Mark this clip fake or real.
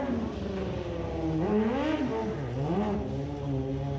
real